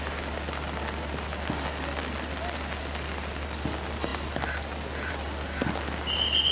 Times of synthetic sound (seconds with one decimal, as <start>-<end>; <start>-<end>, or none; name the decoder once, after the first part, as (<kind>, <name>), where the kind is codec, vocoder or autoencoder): none